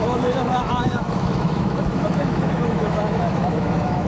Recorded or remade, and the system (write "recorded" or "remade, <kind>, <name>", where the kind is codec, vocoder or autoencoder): remade, autoencoder, DAC-VAE